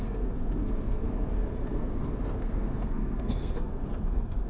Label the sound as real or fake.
fake